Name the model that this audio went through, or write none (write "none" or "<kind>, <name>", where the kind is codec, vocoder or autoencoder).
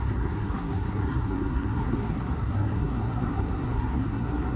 codec, SNAC